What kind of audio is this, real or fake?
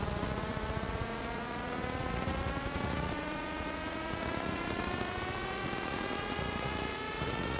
fake